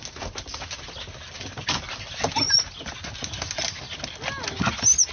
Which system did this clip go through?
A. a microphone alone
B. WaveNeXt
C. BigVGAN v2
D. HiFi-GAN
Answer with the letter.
A